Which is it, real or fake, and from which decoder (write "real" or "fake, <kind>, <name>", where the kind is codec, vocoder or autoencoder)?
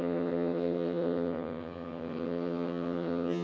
fake, vocoder, HiFi-GAN